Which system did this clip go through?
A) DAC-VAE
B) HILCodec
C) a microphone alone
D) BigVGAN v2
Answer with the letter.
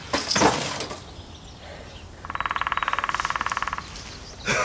C